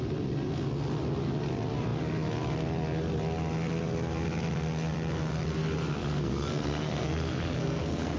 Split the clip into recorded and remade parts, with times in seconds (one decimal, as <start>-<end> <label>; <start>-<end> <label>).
0.0-6.0 recorded; 6.0-8.2 remade